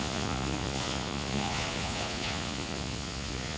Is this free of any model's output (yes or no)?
no